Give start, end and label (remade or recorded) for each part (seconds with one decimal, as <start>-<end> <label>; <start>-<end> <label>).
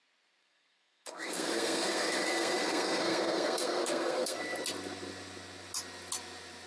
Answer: 0.0-0.4 recorded; 0.4-4.4 remade; 4.4-6.7 recorded